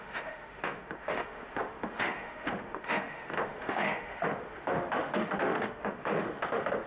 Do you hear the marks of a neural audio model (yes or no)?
yes